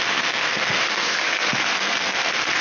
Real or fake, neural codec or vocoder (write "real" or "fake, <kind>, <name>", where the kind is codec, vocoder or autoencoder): fake, codec, SNAC